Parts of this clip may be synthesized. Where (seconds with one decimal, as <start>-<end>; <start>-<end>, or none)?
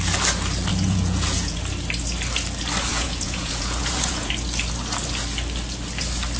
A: 0.7-1.6; 2.9-4.3